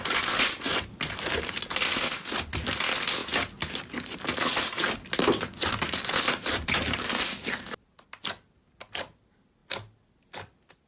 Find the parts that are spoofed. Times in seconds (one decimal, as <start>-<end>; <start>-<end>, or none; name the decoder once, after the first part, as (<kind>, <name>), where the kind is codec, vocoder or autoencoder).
none

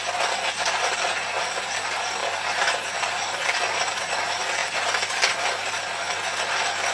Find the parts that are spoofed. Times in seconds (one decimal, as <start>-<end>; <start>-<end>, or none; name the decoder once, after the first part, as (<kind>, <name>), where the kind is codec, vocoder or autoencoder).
none

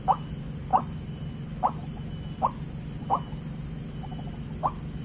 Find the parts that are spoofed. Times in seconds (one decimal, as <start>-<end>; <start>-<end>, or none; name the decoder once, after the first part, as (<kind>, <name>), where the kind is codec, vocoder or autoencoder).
none

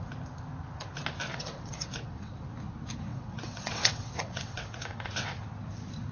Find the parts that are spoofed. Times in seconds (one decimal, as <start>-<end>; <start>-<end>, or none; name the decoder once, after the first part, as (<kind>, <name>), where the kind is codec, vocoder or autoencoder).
1.3-2.3 (vocoder, WaveNeXt); 3.1-5.4

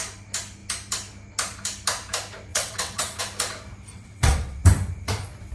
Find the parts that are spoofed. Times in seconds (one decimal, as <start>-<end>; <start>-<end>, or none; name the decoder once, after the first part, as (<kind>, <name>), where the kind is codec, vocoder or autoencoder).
2.5-3.2 (vocoder, WaveNeXt); 3.9-4.6

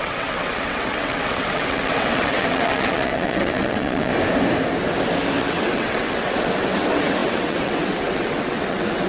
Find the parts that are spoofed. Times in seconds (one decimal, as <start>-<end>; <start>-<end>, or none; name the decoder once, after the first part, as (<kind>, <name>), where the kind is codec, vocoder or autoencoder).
0.0-4.1 (vocoder, WaveNeXt); 5.4-9.1

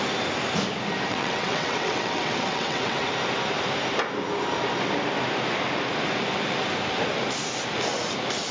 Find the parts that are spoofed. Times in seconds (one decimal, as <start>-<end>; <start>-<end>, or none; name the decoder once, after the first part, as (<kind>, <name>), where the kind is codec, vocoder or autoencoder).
1.1-3.1 (vocoder, WaveNeXt)

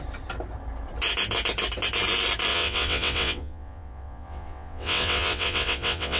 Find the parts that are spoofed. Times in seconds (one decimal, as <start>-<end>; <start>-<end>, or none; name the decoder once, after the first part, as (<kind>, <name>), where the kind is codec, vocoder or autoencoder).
2.5-6.2 (vocoder, WaveNeXt)